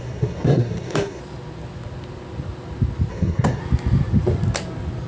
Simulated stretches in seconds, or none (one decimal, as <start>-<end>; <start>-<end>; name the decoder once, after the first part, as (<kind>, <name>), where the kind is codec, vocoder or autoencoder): 0.0-1.2 (codec, SNAC); 3.1-3.6

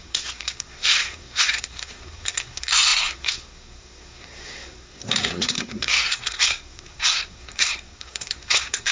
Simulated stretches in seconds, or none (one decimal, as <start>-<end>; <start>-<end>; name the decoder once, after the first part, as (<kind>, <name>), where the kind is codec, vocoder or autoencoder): 0.0-8.9 (codec, SNAC)